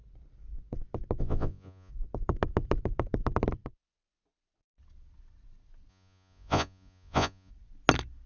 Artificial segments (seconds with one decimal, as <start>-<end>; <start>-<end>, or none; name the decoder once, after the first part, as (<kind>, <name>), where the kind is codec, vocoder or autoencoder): 1.2-1.9 (vocoder, Vocos); 5.9-7.5